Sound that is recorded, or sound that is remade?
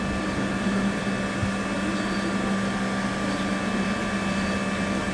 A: recorded